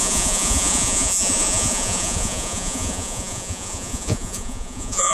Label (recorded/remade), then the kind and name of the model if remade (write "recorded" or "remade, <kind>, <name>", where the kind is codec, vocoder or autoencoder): remade, vocoder, Vocos